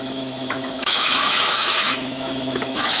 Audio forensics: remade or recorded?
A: remade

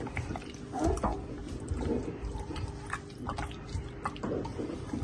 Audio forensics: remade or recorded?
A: recorded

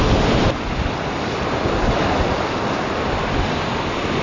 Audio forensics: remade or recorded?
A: recorded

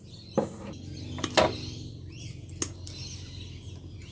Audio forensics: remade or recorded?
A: recorded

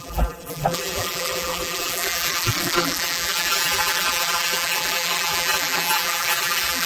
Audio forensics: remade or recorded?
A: remade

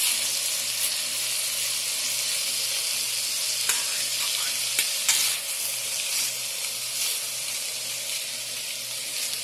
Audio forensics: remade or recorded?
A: recorded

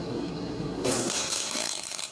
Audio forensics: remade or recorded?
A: remade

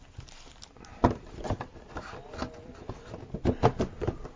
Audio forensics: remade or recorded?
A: recorded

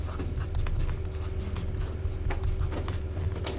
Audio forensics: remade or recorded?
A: recorded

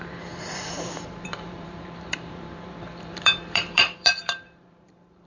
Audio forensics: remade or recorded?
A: remade